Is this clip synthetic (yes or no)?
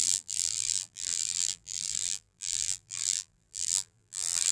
yes